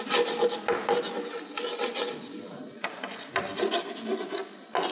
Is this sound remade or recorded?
recorded